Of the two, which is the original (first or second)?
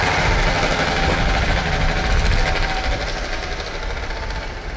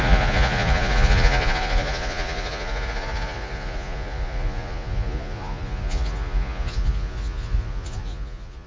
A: first